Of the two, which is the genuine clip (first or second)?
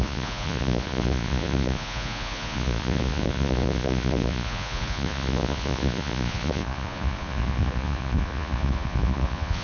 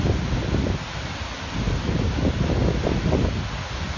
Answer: second